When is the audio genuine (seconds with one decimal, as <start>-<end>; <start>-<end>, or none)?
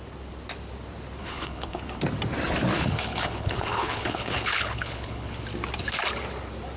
0.0-1.2; 2.0-2.7; 5.4-6.8